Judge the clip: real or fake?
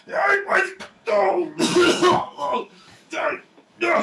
fake